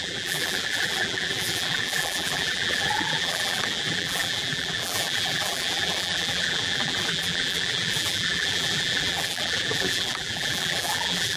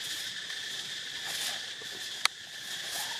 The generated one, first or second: first